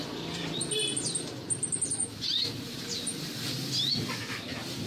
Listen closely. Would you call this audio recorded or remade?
remade